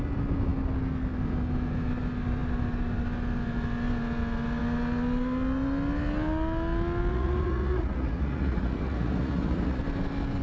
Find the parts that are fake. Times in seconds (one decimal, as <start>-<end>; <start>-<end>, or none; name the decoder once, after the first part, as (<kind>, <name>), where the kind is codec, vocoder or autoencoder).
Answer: 7.1-9.8 (vocoder, Vocos)